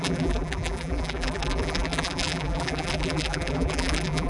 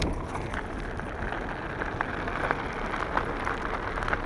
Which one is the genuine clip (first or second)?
second